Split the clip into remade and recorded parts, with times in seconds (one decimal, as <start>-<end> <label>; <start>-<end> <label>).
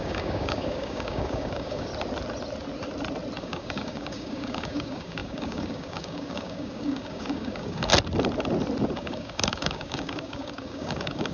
0.0-1.9 remade; 1.9-3.4 recorded; 3.4-7.9 remade; 7.9-8.9 recorded; 8.9-11.3 remade